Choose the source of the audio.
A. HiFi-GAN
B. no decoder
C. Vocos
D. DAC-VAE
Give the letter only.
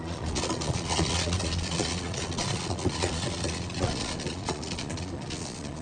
C